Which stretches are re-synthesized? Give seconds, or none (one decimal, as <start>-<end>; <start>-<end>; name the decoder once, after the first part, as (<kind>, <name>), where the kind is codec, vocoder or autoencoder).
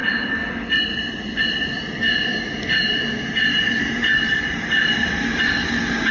none